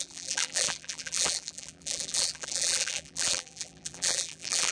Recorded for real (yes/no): no